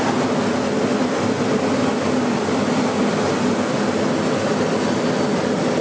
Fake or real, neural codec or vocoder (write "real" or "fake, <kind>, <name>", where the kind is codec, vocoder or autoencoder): real